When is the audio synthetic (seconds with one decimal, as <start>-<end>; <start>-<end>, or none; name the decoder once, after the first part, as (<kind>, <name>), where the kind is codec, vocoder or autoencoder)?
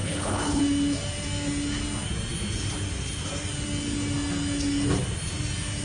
0.0-0.6 (codec, HILCodec)